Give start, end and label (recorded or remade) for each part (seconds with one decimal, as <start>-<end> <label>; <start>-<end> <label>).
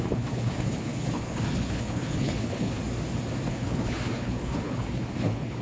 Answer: 0.0-2.8 remade; 2.8-3.5 recorded; 3.5-5.6 remade